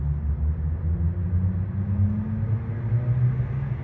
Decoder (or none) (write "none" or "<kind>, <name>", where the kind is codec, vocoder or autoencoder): none